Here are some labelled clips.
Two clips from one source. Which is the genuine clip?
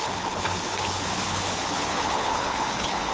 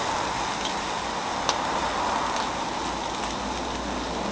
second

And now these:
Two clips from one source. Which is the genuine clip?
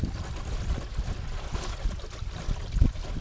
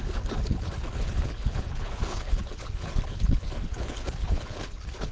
first